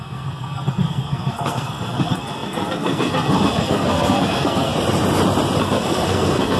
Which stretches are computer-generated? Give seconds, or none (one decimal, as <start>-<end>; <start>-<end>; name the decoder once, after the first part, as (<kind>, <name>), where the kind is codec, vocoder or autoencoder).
0.0-4.7 (codec, SNAC); 5.6-6.6